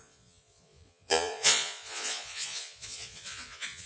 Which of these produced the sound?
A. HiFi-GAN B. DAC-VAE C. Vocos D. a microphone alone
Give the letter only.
C